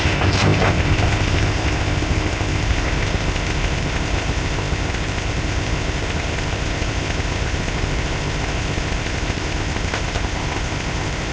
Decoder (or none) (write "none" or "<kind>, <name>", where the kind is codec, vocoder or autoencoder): codec, ZipCodec